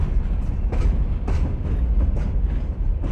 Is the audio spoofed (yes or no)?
no